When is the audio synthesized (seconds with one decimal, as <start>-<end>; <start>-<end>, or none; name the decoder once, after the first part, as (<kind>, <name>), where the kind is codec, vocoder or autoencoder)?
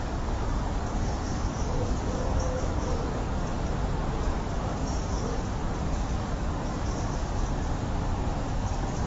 0.0-3.5 (codec, DAC); 4.1-9.1